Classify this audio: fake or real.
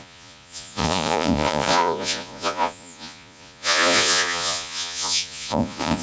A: fake